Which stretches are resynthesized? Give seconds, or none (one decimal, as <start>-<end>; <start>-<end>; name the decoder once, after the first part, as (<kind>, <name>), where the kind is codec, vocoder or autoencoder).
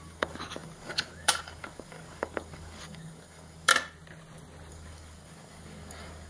0.0-3.7 (codec, DAC); 4.7-6.3